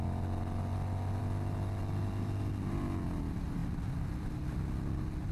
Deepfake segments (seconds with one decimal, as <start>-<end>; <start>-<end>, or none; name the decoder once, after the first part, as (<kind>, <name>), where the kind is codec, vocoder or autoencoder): none